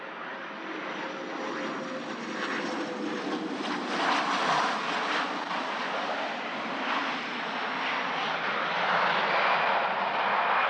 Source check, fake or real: real